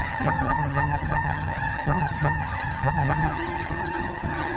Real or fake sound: fake